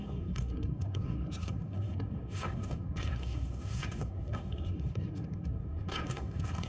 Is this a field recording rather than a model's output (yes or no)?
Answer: no